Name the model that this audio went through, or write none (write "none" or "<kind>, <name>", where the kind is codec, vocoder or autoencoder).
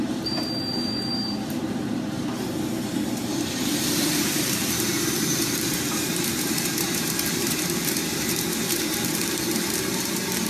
vocoder, BigVGAN v2